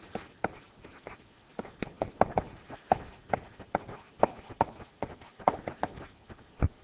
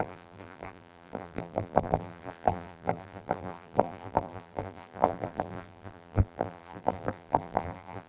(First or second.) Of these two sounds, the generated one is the second